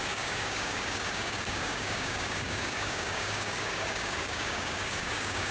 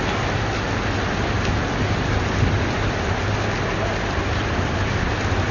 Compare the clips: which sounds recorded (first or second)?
second